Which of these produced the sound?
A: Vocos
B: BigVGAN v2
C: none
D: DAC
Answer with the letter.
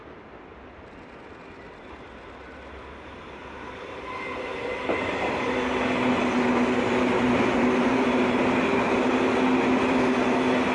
C